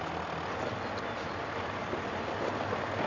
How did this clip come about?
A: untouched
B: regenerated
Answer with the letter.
A